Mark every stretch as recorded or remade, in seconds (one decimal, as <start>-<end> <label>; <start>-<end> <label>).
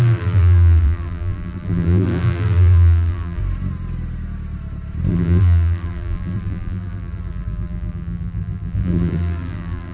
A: 0.0-3.4 remade; 3.4-5.1 recorded; 5.1-9.9 remade